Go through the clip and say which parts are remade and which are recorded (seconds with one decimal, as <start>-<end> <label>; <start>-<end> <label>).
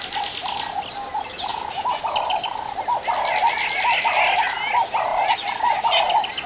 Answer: 0.0-5.1 recorded; 5.1-5.6 remade; 5.6-6.5 recorded